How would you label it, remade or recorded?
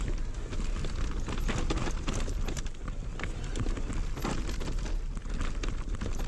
recorded